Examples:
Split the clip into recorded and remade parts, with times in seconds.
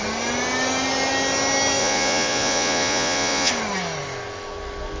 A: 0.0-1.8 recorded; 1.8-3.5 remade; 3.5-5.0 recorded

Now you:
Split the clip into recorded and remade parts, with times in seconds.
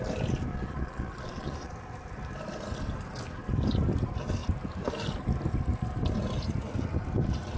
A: 0.0-0.5 recorded; 0.5-1.7 remade; 1.7-7.6 recorded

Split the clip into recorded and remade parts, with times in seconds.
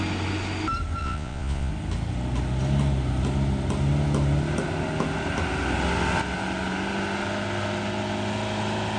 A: 0.0-1.0 recorded; 1.0-1.7 remade; 1.7-9.0 recorded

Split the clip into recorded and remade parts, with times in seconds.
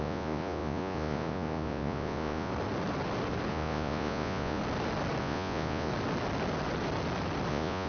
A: 0.0-2.5 remade; 2.5-3.5 recorded; 3.5-4.6 remade; 4.6-5.2 recorded; 5.2-5.9 remade; 5.9-7.5 recorded; 7.5-7.9 remade